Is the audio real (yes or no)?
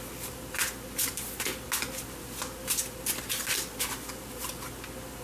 yes